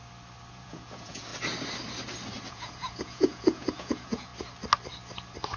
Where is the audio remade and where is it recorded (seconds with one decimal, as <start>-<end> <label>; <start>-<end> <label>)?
0.0-0.5 recorded; 0.5-1.3 remade; 1.3-2.5 recorded; 2.5-4.3 remade; 4.3-5.6 recorded